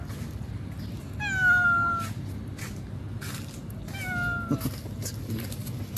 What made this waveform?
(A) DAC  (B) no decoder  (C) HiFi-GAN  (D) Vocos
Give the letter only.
B